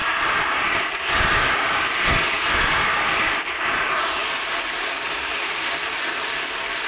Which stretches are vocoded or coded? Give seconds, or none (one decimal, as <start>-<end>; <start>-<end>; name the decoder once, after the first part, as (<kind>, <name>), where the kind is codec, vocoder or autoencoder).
0.0-6.9 (vocoder, BigVGAN v2)